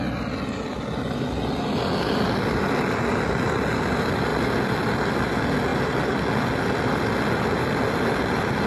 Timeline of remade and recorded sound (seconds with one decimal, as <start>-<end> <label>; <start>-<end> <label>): 0.0-8.7 recorded